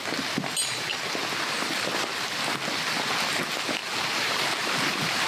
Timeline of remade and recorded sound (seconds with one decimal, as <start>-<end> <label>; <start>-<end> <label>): 0.0-3.8 recorded; 3.8-5.3 remade